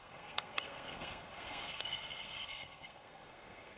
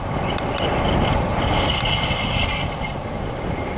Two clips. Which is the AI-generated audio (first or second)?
first